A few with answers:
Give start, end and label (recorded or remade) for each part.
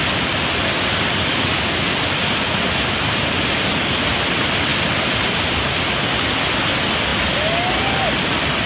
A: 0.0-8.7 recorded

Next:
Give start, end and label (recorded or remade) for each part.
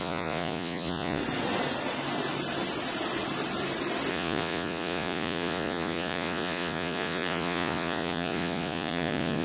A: 0.0-1.2 remade; 1.2-4.1 recorded; 4.1-9.4 remade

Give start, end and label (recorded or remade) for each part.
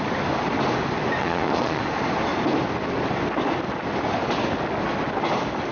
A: 0.0-1.2 recorded; 1.2-1.8 remade; 1.8-5.7 recorded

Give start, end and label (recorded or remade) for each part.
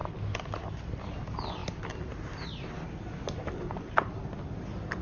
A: 0.0-5.0 recorded